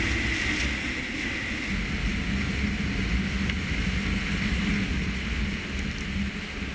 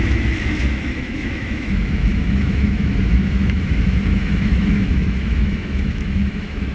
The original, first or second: first